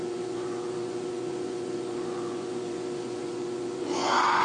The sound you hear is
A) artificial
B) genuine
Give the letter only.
A